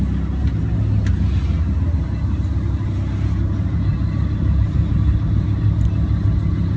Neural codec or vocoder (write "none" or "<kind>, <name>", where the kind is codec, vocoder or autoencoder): none